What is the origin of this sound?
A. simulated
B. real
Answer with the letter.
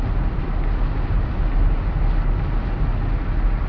B